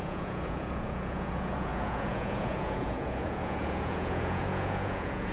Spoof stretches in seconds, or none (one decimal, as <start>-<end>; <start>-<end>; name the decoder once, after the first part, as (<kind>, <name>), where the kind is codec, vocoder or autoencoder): 0.0-5.3 (vocoder, Vocos)